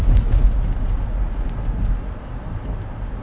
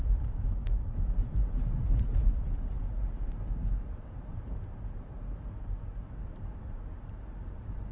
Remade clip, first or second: second